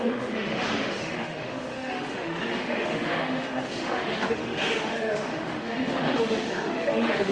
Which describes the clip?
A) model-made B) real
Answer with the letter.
A